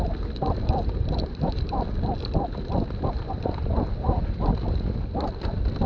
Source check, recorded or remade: recorded